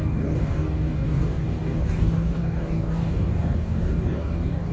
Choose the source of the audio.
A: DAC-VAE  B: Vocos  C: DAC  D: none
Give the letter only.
C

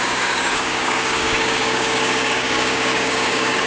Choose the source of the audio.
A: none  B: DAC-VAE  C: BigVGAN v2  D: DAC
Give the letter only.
D